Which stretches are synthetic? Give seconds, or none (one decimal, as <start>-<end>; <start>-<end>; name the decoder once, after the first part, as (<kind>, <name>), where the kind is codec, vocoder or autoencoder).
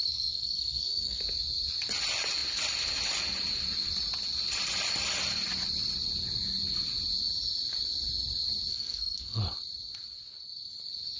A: 0.0-1.2 (codec, SNAC); 8.7-9.4